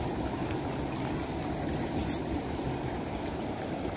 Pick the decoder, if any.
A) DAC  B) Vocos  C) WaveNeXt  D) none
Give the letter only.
D